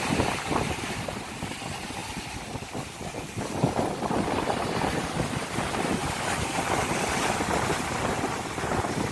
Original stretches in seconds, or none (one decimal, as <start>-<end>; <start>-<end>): 2.0-2.8

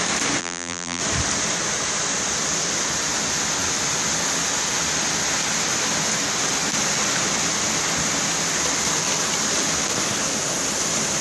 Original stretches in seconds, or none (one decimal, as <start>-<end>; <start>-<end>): 0.0-0.4; 1.0-11.2

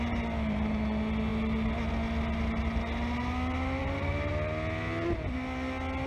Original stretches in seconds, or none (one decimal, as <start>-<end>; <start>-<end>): 0.0-3.8; 4.3-6.1

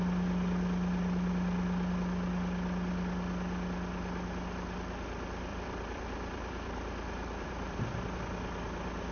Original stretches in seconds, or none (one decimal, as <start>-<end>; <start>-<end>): 0.0-5.5; 8.2-9.1

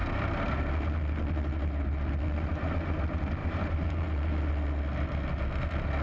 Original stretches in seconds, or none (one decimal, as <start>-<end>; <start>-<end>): 0.5-3.4; 4.5-6.0

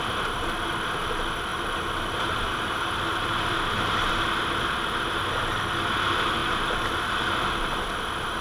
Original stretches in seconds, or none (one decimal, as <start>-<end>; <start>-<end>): 0.0-1.5; 4.1-8.4

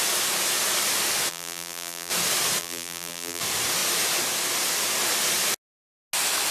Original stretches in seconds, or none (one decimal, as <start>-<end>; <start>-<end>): 0.0-1.3; 2.1-2.6; 3.4-6.5